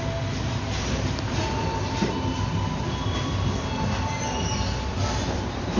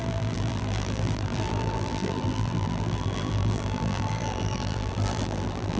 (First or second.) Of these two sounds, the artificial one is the second